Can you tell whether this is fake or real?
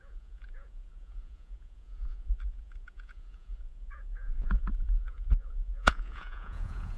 fake